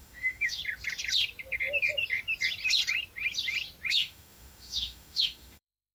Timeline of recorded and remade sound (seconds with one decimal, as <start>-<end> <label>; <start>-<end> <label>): 0.0-0.6 remade; 0.6-3.9 recorded; 3.9-5.9 remade